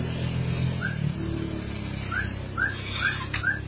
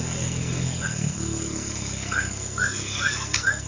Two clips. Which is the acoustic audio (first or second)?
first